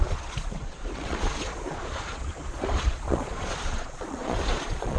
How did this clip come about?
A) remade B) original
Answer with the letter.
A